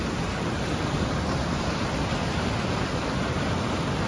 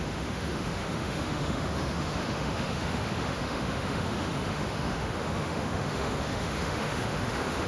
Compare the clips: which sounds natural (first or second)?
first